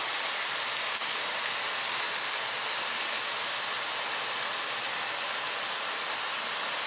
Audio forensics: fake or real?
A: real